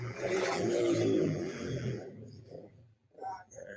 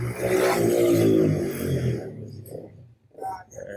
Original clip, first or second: second